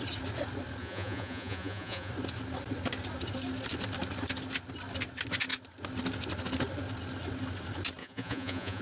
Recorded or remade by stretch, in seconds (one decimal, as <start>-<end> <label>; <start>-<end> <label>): 0.0-0.8 recorded; 0.8-2.1 remade; 2.1-8.0 recorded; 8.0-8.8 remade